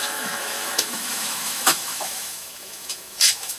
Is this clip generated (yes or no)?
yes